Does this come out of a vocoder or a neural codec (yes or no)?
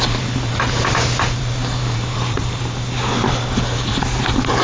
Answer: yes